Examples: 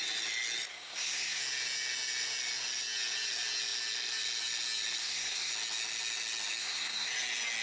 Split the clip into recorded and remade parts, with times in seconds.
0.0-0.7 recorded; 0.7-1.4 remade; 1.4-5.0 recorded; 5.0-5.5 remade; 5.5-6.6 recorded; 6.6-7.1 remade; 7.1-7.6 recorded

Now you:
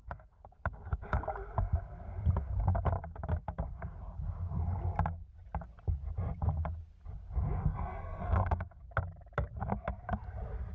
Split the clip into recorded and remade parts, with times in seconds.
0.0-7.6 recorded; 7.6-8.8 remade; 8.8-10.7 recorded

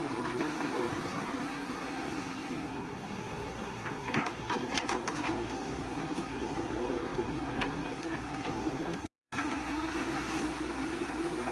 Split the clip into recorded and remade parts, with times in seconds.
0.0-11.5 remade

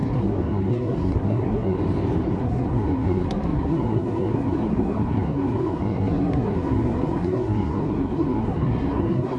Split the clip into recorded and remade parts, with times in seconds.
0.0-1.8 remade; 1.8-2.4 recorded; 2.4-9.4 remade

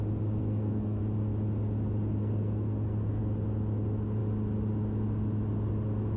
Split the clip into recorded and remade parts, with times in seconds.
0.0-0.4 recorded; 0.4-1.0 remade; 1.0-2.2 recorded; 2.2-3.2 remade; 3.2-6.2 recorded

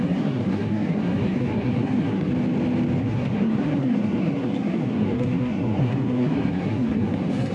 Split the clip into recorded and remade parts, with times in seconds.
0.0-2.3 remade; 2.3-3.0 recorded; 3.0-7.5 remade

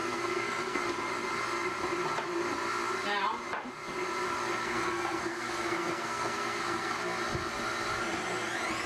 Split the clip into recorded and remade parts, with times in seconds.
0.0-0.8 remade; 0.8-4.6 recorded; 4.6-7.0 remade; 7.0-8.9 recorded